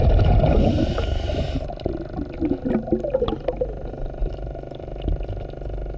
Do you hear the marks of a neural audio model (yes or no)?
no